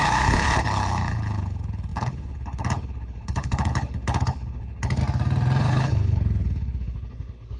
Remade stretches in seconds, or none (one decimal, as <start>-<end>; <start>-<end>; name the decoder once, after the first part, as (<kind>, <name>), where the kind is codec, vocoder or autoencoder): 0.0-5.0 (codec, HILCodec); 5.6-7.6